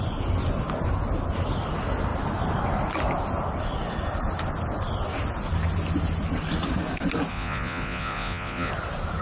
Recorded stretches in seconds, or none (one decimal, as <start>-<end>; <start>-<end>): 0.0-7.3; 8.7-9.2

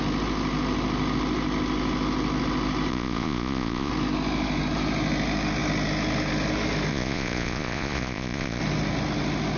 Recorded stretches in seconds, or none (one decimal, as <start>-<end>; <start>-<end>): 0.0-2.9; 3.9-6.9; 8.6-9.6

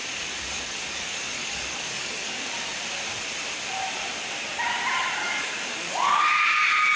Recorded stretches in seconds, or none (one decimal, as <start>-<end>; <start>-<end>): 2.7-5.2; 6.2-7.0

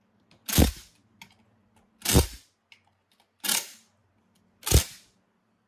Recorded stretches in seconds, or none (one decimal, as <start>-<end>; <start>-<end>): 0.0-5.7

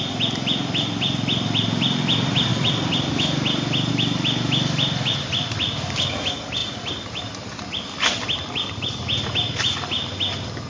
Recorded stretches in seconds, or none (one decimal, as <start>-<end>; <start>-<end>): 0.0-10.7

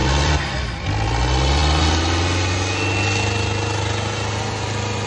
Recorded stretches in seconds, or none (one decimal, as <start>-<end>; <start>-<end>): 0.7-5.1

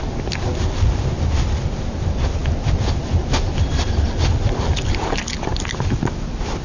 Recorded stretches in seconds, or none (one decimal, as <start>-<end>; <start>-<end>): 0.0-6.6

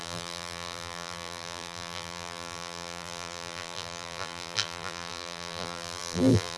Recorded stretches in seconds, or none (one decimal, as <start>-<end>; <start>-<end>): none